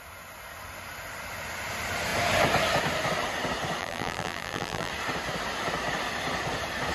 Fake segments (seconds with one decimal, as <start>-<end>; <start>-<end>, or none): 3.8-4.9